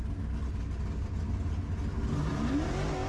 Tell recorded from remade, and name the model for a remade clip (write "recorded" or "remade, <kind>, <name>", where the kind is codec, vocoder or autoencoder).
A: recorded